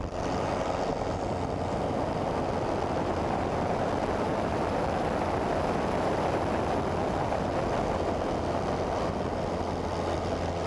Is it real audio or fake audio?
real